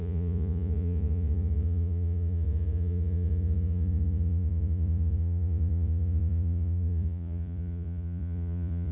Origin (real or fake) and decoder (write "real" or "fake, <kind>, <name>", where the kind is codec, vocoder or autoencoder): fake, vocoder, Vocos